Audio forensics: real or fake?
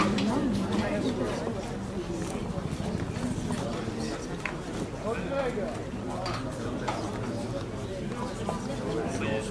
real